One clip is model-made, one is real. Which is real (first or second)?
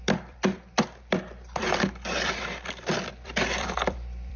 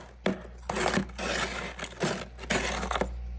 second